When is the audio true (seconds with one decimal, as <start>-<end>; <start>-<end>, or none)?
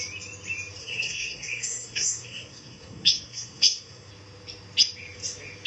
0.0-0.8; 4.1-5.7